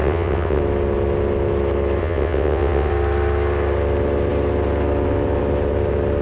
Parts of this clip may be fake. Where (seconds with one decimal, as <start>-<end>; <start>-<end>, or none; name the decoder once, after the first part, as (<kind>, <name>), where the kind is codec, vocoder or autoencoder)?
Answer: 0.0-0.6 (vocoder, WaveNeXt); 2.0-2.9